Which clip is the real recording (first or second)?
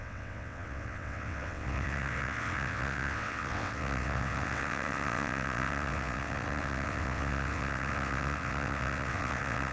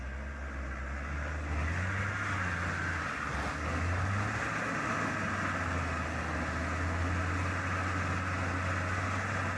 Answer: second